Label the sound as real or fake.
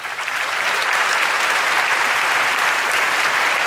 fake